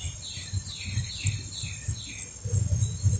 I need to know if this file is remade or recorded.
recorded